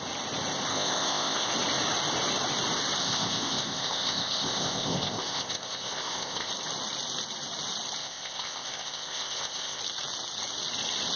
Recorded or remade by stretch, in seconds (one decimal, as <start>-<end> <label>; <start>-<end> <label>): 0.0-0.7 recorded; 0.7-1.5 remade; 1.5-3.0 recorded; 3.0-6.5 remade; 6.5-8.0 recorded; 8.0-9.8 remade; 9.8-11.2 recorded